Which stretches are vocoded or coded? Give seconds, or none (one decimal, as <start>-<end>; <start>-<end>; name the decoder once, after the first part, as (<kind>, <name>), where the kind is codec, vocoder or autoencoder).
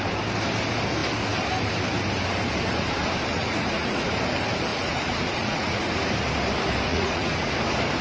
3.3-4.1 (vocoder, Vocos); 4.7-5.9; 6.9-7.5